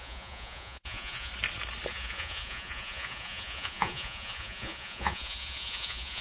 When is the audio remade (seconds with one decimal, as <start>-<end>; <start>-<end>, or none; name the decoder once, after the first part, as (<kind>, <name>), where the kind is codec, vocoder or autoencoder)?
0.0-1.3 (vocoder, Vocos); 1.9-6.2